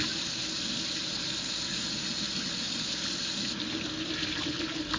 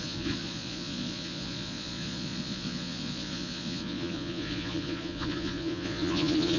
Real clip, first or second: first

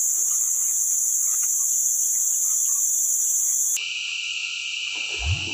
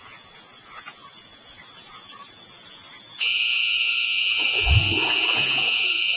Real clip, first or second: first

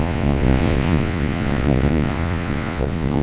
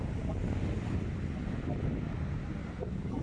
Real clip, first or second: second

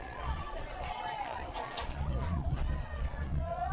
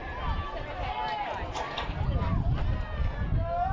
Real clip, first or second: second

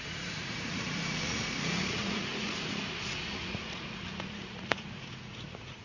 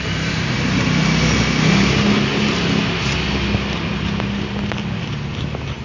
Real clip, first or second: second